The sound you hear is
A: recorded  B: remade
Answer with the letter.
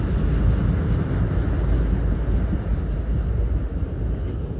A